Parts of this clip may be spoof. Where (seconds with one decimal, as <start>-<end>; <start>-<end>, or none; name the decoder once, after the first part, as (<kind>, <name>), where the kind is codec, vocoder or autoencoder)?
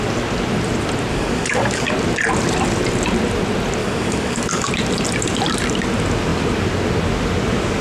1.1-1.9 (codec, DAC); 3.8-4.7